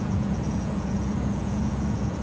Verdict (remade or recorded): remade